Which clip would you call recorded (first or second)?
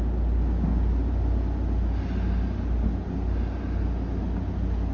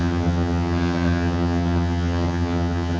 first